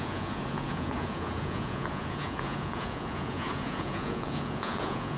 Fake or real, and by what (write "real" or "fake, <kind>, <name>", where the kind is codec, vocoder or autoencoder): fake, vocoder, Vocos